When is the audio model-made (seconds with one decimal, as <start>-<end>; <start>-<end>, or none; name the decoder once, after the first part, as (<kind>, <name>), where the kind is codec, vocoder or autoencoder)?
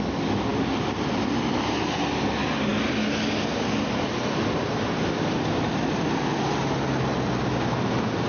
none